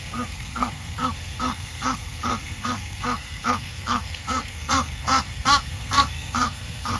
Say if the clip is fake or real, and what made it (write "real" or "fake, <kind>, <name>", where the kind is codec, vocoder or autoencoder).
fake, codec, SNAC